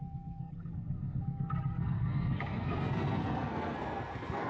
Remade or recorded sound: remade